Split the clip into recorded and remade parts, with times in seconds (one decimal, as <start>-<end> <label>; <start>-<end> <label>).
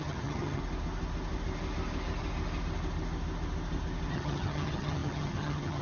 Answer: 0.0-0.6 remade; 0.6-4.1 recorded; 4.1-5.8 remade